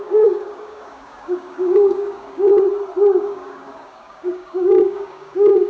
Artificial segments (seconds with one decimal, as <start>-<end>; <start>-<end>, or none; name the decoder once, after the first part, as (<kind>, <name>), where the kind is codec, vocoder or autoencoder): 0.0-2.5 (codec, DAC); 3.2-5.7